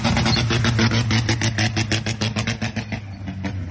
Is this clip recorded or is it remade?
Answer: recorded